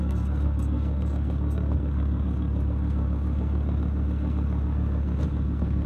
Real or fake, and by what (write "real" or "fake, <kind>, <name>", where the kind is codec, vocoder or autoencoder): fake, codec, SNAC